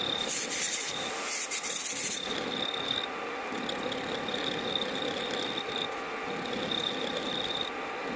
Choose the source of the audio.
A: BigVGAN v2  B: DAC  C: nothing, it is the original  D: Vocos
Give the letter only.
C